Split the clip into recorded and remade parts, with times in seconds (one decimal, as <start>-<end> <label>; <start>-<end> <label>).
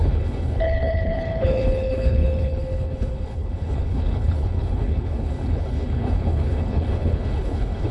0.0-7.9 remade